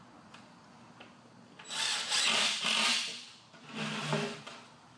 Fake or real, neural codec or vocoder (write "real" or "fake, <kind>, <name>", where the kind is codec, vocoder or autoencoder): real